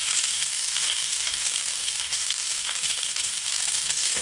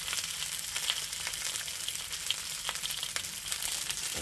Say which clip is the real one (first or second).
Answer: second